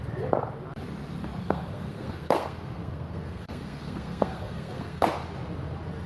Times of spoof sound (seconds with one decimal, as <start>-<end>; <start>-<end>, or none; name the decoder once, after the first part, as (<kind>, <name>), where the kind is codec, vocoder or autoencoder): 1.4-5.1 (codec, SNAC)